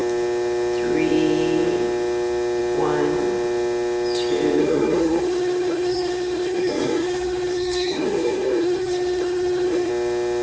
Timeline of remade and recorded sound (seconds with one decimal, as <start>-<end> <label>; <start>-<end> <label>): 0.0-4.6 recorded; 4.6-9.9 remade; 9.9-10.4 recorded

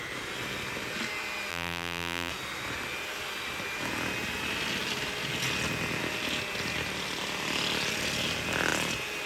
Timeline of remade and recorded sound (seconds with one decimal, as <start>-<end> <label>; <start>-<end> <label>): 0.0-1.5 recorded; 1.5-2.3 remade; 2.3-9.3 recorded

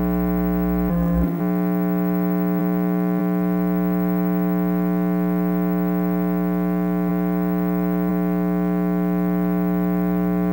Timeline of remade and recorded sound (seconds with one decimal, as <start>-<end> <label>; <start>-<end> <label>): 0.0-0.9 recorded; 0.9-1.4 remade; 1.4-10.5 recorded

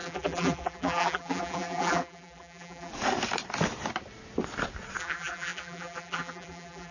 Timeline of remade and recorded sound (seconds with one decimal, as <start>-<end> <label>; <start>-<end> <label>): 0.0-2.9 remade; 2.9-5.0 recorded; 5.0-6.9 remade

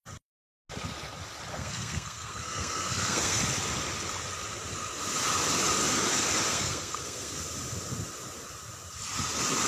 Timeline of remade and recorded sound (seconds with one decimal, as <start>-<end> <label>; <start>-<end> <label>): 0.0-1.5 recorded; 1.5-3.4 remade; 3.4-6.5 recorded; 6.5-7.4 remade; 7.4-9.7 recorded